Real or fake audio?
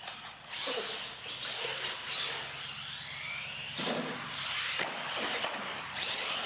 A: real